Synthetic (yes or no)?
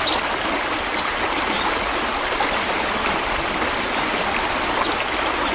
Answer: no